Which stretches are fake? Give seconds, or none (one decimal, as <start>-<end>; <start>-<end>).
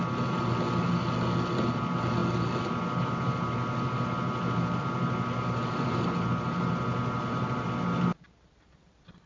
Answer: none